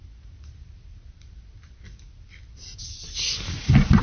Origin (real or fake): real